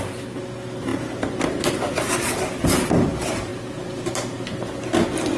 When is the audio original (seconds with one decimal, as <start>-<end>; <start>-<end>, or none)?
0.0-5.4